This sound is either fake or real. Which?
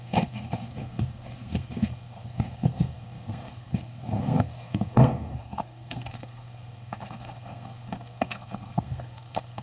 fake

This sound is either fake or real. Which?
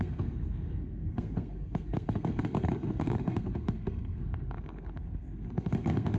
fake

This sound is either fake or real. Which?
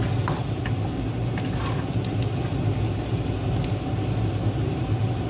real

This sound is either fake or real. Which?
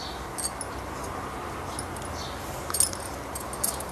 real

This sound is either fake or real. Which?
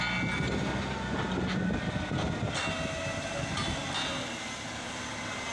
real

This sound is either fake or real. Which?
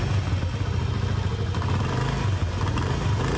real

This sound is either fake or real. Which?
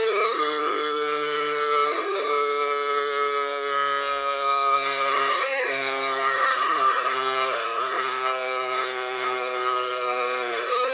fake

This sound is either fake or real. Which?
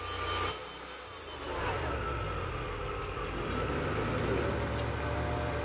real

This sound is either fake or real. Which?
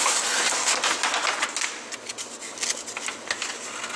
real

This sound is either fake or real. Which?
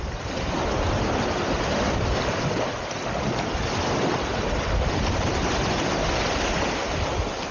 real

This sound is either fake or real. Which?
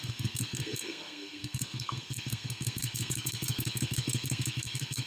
fake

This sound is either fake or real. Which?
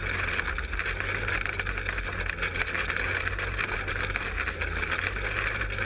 real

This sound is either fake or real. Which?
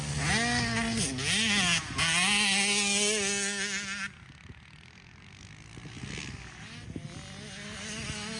real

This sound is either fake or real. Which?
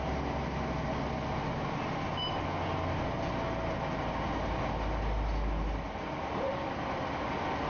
real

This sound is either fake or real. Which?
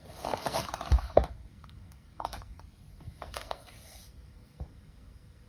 fake